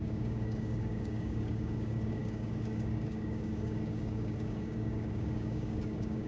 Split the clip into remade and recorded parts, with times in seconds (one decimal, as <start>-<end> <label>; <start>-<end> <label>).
0.0-6.3 remade